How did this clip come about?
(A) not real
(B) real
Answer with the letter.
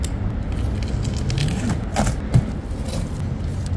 B